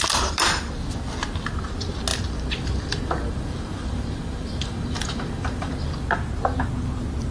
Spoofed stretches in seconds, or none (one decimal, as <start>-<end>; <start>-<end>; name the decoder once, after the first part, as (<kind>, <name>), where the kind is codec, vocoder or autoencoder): 0.0-1.5 (vocoder, BigVGAN v2); 2.1-5.7